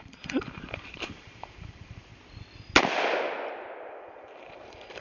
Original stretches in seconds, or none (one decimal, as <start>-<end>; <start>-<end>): 2.1-3.9